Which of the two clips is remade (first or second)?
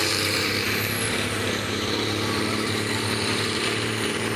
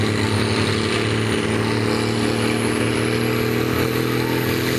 first